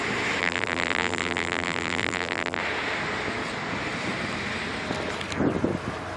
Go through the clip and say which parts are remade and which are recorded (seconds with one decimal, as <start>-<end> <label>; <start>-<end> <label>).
0.0-0.4 recorded; 0.4-2.6 remade; 2.6-6.2 recorded